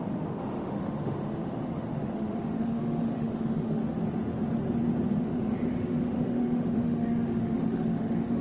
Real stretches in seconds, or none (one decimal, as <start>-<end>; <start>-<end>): 3.8-5.2